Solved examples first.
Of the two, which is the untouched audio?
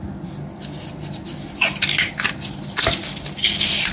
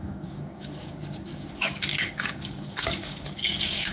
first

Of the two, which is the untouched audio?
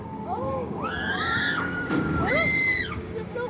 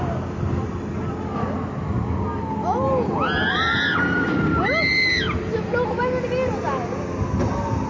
second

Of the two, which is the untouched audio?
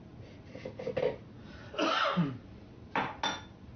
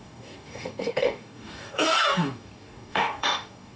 first